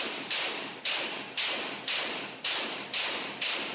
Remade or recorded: recorded